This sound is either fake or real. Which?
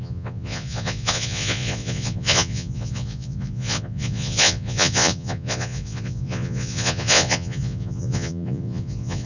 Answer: fake